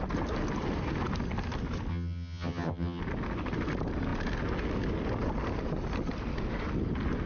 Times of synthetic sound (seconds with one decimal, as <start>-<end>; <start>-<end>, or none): 1.9-3.0